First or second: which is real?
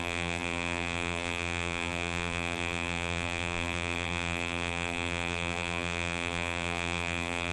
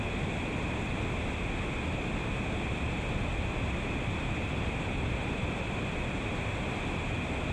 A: second